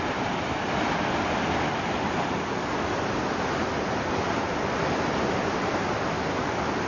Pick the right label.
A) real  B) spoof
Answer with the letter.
A